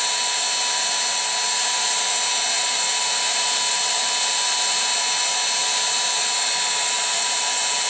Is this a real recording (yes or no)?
yes